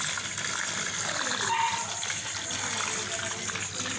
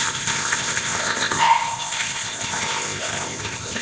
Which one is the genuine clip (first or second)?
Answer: first